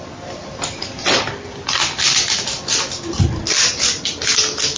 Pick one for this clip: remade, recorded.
recorded